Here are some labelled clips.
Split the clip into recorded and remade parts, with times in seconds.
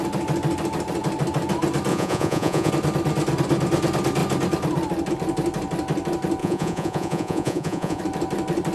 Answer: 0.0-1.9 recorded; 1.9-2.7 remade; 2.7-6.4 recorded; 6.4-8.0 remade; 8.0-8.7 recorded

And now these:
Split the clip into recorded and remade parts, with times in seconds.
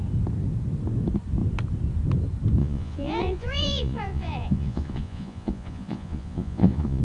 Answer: 0.0-2.6 recorded; 2.6-7.0 remade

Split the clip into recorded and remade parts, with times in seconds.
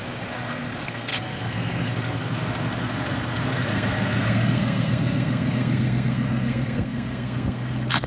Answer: 0.0-8.1 remade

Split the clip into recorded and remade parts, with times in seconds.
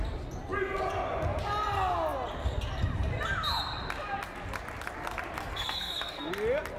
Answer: 0.0-5.5 recorded; 5.5-6.3 remade; 6.3-6.8 recorded